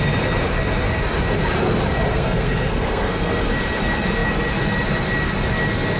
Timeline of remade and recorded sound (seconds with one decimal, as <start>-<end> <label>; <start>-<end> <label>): 0.0-2.1 recorded; 2.1-3.5 remade; 3.5-6.0 recorded